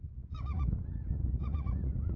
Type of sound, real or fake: fake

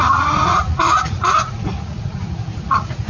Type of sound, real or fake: fake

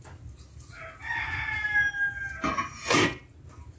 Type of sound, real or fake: real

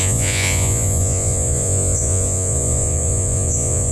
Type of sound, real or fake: fake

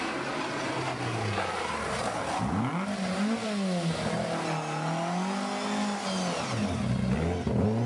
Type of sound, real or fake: real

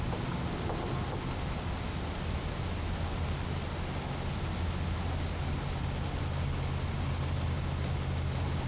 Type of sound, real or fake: real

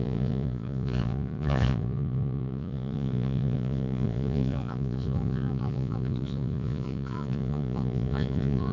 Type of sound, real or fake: fake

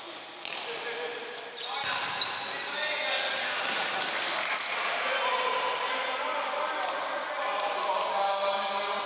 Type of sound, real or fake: real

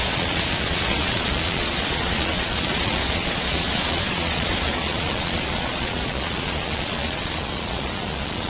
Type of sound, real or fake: fake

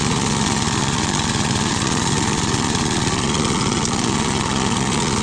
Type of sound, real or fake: fake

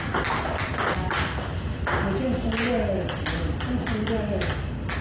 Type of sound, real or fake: real